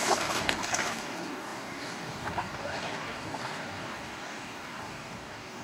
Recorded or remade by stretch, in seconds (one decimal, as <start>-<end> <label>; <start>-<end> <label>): 0.0-5.6 remade